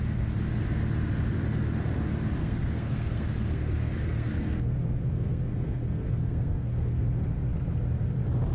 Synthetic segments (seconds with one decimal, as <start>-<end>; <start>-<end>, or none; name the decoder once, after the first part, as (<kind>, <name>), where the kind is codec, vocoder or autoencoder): 2.4-7.5 (codec, SNAC)